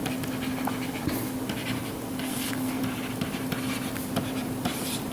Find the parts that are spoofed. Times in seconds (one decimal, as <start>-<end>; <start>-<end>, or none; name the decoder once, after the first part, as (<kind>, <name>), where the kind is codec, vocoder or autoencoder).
2.2-2.8 (codec, SNAC)